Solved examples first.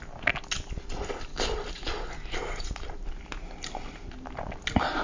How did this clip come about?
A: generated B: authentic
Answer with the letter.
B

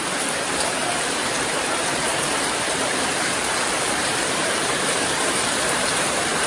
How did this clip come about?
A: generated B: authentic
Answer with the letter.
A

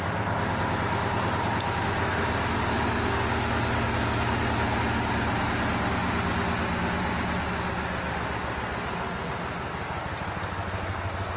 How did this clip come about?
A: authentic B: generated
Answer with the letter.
A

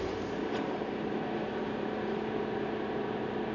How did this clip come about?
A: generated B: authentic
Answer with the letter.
A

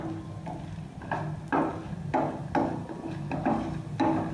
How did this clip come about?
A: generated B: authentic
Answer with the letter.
B